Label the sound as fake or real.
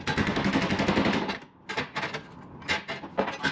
real